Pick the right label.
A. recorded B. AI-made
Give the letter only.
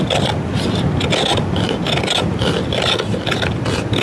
A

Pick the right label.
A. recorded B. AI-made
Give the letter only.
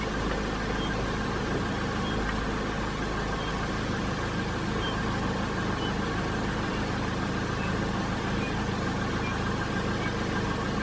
A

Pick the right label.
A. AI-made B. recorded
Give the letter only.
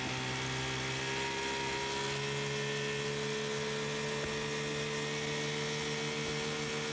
B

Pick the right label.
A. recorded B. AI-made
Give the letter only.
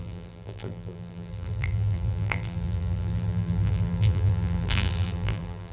B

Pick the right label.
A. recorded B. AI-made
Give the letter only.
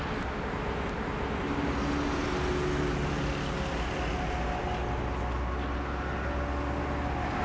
A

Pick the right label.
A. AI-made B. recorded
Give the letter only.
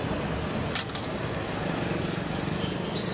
A